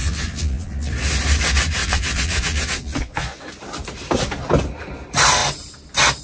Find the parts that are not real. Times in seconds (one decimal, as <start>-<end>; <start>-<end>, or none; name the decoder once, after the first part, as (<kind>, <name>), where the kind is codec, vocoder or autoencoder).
0.0-0.9 (vocoder, Vocos); 1.8-3.4